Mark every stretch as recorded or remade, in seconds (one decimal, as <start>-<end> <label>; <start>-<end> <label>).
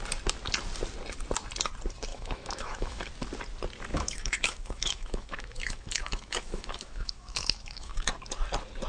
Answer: 0.0-2.1 recorded; 2.1-3.0 remade; 3.0-3.9 recorded; 3.9-8.1 remade; 8.1-8.9 recorded